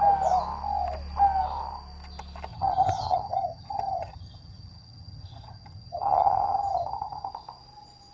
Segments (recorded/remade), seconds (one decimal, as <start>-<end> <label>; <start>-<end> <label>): 0.0-2.5 recorded; 2.5-7.3 remade; 7.3-8.1 recorded